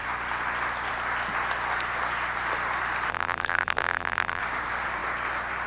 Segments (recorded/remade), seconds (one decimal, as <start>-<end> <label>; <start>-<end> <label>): 0.0-3.1 recorded; 3.1-4.4 remade; 4.4-5.7 recorded